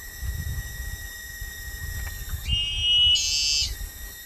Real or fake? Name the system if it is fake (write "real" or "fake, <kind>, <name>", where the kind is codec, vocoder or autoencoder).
real